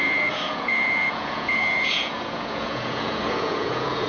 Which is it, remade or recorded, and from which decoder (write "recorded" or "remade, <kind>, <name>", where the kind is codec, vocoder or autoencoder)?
remade, vocoder, Vocos